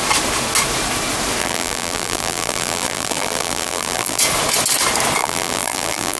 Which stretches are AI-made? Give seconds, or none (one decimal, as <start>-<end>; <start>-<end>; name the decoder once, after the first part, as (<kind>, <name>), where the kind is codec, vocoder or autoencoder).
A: 1.4-4.2 (vocoder, BigVGAN v2); 5.2-6.2